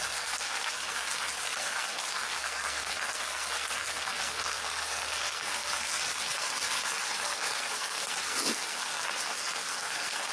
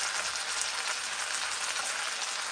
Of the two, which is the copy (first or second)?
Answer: first